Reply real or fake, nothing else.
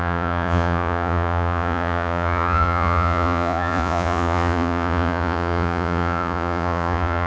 fake